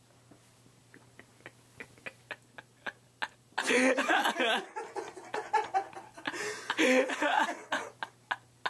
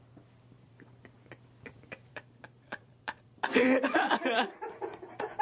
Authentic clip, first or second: first